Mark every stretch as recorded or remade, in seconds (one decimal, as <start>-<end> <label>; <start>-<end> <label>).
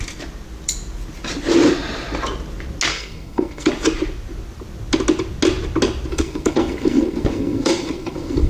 0.0-2.9 recorded; 2.9-3.7 remade; 3.7-6.1 recorded; 6.1-8.5 remade